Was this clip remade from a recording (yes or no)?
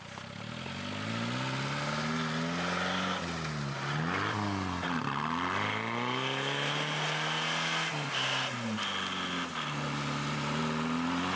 no